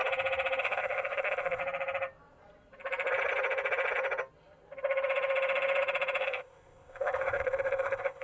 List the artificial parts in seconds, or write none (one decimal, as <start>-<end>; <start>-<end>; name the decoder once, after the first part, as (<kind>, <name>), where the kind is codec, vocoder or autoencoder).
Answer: 0.6-1.6 (codec, ZipCodec); 6.2-8.2